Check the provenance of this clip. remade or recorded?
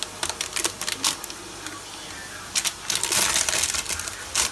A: recorded